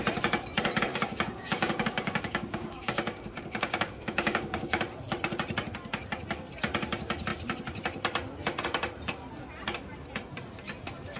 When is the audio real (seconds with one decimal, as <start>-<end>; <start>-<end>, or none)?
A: 0.0-0.9; 4.8-11.2